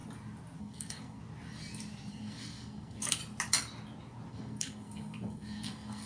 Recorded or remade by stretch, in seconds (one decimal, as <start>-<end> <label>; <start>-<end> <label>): 0.0-0.6 recorded; 0.6-1.2 remade; 1.2-2.1 recorded; 2.1-3.2 remade; 3.2-4.3 recorded; 4.3-6.1 remade